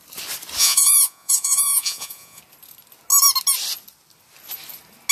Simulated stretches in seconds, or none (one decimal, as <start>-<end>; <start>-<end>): 0.6-2.4